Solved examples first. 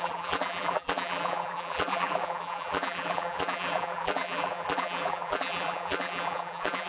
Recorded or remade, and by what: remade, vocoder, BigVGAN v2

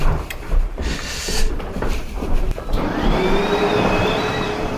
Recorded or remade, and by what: remade, vocoder, BigVGAN v2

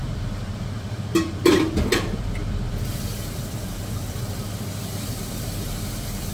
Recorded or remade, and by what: remade, vocoder, BigVGAN v2